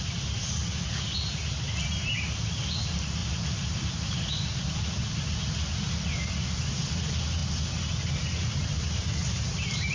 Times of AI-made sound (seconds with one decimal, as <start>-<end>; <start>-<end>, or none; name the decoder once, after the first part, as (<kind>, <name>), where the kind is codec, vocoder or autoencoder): 3.2-5.4 (vocoder, BigVGAN v2)